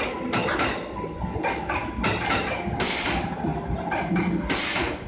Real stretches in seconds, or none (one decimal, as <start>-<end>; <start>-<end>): 0.0-5.1